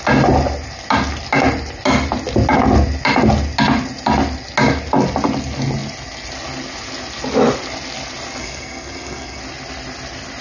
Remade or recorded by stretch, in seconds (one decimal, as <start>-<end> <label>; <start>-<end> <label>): 0.0-8.4 recorded; 8.4-9.4 remade; 9.4-10.4 recorded